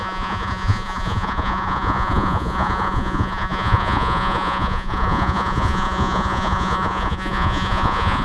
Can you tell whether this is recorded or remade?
remade